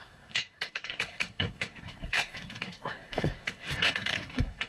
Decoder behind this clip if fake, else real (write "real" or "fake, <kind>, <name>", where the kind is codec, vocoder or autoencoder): fake, codec, SNAC